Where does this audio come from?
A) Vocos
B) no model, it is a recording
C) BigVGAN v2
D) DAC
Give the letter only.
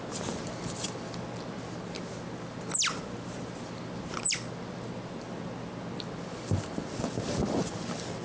B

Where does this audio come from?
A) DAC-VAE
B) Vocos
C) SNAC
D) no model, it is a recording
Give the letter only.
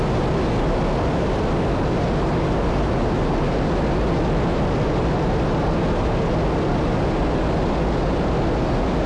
D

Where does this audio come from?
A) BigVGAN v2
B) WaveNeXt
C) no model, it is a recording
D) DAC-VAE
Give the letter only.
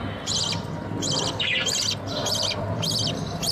C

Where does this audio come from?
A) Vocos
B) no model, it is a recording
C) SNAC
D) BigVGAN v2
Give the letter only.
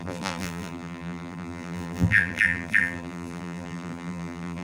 D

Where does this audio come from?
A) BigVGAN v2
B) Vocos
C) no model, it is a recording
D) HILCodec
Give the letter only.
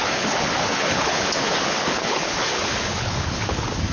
D